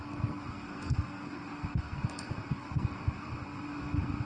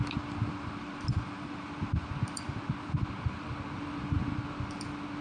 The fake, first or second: first